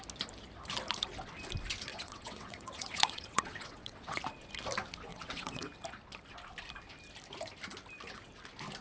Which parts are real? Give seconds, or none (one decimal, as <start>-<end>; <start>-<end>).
0.0-1.9; 4.2-5.1; 5.7-8.8